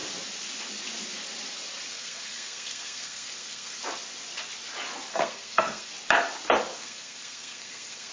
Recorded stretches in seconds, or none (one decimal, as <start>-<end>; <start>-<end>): 0.0-1.9; 3.8-5.1; 5.9-6.7